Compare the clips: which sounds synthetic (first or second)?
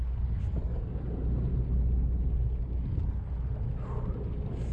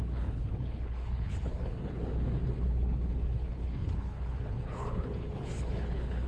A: second